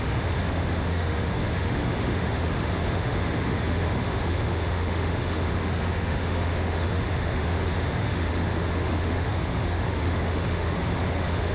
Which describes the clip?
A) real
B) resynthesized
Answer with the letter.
B